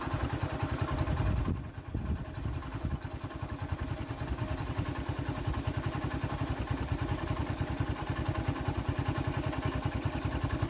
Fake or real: real